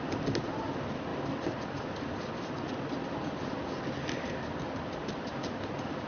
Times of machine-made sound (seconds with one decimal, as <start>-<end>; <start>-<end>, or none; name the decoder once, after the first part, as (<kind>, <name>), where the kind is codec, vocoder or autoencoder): none